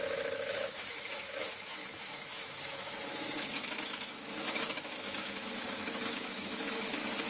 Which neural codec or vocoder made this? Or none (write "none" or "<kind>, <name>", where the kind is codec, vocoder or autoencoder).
autoencoder, DAC-VAE